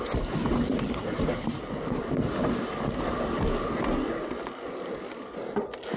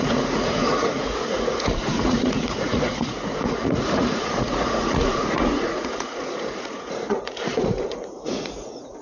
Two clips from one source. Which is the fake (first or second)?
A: second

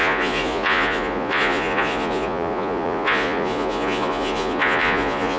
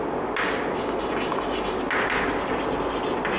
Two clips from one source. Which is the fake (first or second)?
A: first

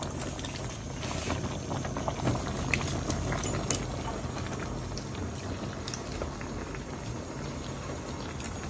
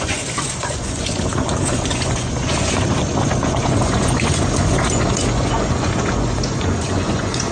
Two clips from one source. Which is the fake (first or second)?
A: second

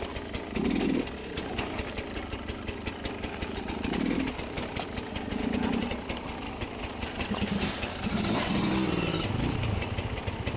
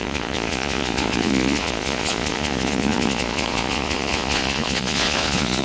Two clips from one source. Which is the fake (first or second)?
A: second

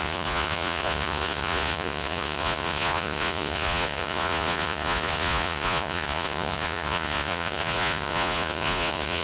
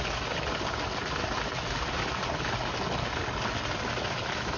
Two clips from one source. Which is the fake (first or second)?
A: first